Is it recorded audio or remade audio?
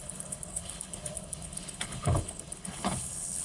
remade